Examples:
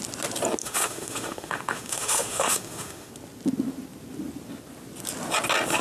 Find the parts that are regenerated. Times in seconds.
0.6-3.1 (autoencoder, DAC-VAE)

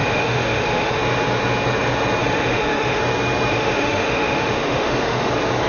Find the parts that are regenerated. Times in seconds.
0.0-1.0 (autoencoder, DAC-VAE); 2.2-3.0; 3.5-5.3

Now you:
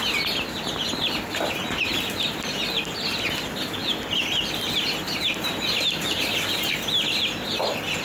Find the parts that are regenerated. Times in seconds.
none

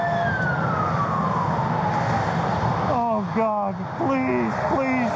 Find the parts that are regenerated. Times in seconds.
none